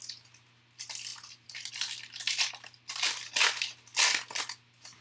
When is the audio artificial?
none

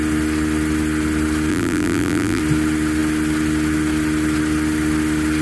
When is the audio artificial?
1.5-2.4 (vocoder, BigVGAN v2)

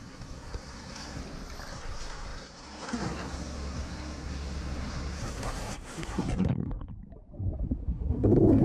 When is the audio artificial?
0.0-1.2 (codec, SNAC); 1.7-6.9; 7.8-8.6

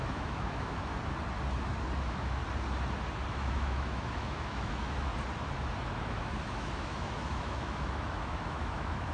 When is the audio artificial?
0.0-0.9 (autoencoder, DAC-VAE); 2.0-2.4; 3.3-5.1; 5.9-9.1

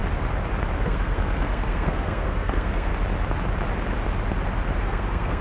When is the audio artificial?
0.8-2.9 (codec, SNAC); 4.8-5.4

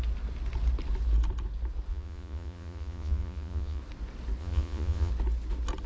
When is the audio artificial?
1.9-3.8 (vocoder, Vocos); 4.4-5.1

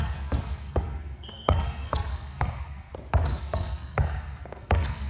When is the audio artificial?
0.0-2.9 (codec, SNAC); 3.4-5.1